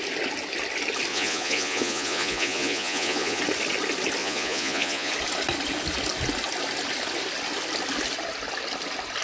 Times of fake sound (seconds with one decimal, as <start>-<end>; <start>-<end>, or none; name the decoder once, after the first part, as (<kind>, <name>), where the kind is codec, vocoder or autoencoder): 1.1-3.4 (vocoder, Vocos); 4.2-5.1